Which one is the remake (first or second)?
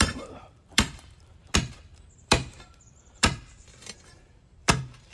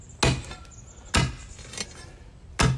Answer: first